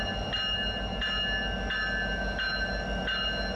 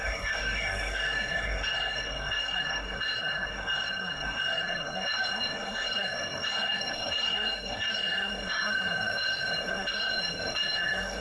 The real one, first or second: first